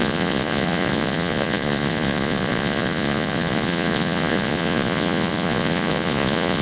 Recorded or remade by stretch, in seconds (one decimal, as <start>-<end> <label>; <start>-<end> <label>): 0.0-6.6 remade